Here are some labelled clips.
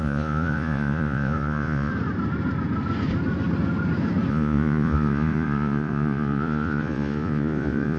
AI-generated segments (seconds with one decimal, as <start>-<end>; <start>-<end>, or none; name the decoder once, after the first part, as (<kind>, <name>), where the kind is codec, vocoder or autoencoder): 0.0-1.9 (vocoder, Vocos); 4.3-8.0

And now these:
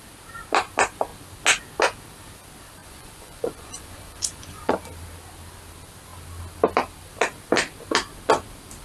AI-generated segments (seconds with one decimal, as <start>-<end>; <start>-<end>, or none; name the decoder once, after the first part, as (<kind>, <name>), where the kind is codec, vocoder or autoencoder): 2.8-4.7 (vocoder, Vocos)

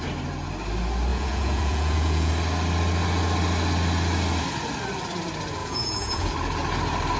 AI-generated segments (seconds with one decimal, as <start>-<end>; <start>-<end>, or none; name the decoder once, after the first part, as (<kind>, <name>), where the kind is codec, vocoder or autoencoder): 1.1-2.3 (vocoder, Vocos); 5.6-6.3

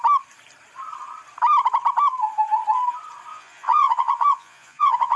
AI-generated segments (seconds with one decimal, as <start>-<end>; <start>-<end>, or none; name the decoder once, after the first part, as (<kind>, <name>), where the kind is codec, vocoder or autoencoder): 3.3-5.2 (vocoder, Vocos)

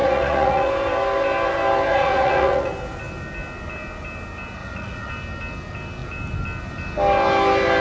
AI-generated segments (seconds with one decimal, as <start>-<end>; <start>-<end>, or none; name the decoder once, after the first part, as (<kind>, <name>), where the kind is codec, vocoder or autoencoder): 0.0-0.7 (vocoder, Vocos); 1.9-2.7; 4.6-5.1